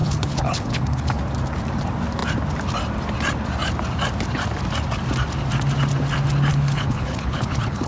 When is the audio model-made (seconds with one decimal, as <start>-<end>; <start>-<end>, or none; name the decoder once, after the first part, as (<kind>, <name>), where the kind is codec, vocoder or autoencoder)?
0.0-1.2 (codec, HILCodec); 6.5-7.9